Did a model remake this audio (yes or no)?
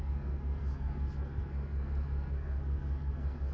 yes